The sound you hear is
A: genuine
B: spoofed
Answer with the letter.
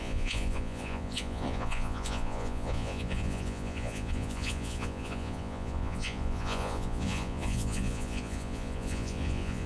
B